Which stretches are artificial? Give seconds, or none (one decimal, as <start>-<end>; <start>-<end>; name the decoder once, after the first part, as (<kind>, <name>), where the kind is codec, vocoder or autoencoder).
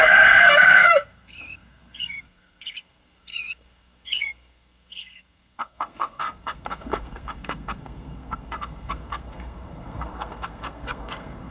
0.0-11.5 (codec, SNAC)